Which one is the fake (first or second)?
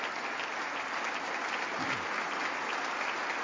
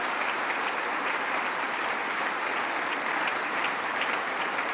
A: second